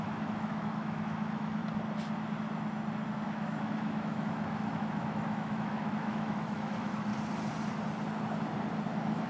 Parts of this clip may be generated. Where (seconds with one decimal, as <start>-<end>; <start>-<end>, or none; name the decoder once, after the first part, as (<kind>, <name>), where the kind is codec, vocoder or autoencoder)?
0.0-1.6 (autoencoder, DAC-VAE); 3.2-7.1; 8.9-9.3